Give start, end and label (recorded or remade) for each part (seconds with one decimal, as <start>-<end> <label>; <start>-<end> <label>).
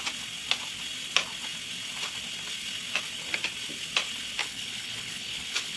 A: 0.0-4.4 recorded; 4.4-5.8 remade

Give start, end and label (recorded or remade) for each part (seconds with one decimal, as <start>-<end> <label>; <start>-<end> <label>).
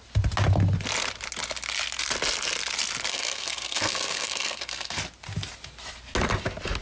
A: 0.0-3.1 recorded; 3.1-5.0 remade; 5.0-6.8 recorded